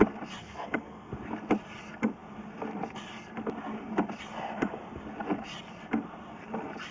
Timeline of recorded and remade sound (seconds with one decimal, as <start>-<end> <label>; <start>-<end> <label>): 0.0-0.4 recorded; 0.4-1.1 remade; 1.1-6.9 recorded